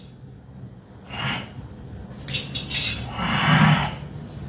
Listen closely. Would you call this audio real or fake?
real